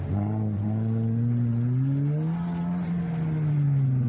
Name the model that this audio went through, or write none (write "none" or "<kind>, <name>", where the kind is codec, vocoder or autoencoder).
none